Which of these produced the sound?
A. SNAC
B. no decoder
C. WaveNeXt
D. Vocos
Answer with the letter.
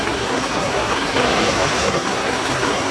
A